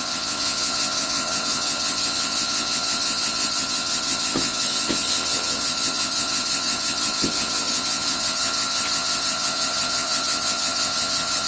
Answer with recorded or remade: remade